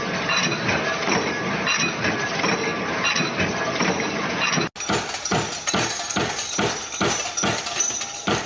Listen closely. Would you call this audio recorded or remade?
recorded